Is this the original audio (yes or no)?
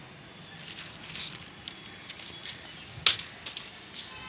yes